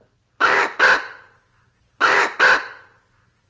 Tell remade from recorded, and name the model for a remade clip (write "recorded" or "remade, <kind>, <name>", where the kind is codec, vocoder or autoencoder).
recorded